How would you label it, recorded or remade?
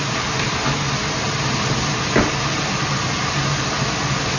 recorded